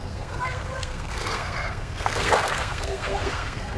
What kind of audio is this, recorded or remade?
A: remade